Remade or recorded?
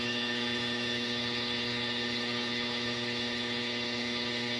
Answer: remade